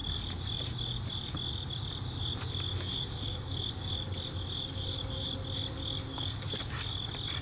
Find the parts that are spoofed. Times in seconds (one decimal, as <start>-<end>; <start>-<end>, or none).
2.7-3.9; 6.1-6.6